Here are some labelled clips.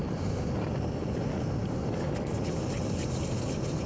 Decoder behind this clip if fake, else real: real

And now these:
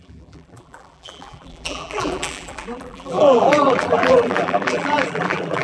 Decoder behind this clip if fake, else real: fake, vocoder, BigVGAN v2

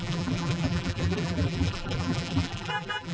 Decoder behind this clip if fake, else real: fake, vocoder, BigVGAN v2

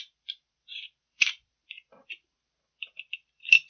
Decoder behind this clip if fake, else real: fake, vocoder, BigVGAN v2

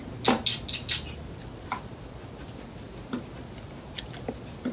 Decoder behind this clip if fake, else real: real